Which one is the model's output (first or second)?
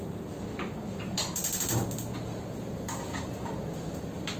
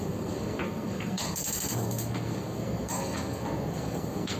second